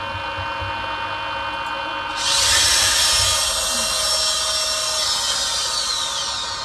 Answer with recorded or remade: recorded